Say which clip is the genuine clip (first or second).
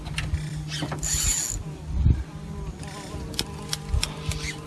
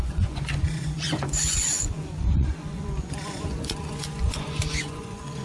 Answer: first